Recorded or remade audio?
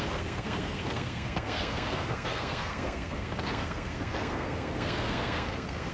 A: remade